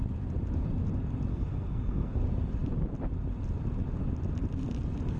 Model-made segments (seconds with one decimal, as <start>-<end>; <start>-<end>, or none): 1.3-2.2